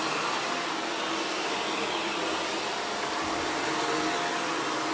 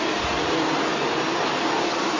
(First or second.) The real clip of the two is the first